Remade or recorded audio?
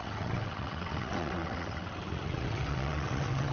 remade